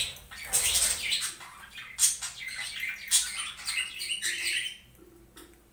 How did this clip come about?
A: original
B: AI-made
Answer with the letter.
A